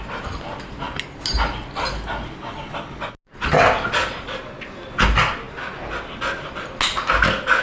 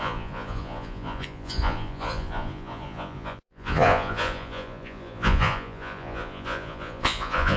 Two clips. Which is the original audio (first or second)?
first